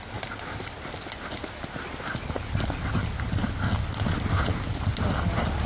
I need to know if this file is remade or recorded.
recorded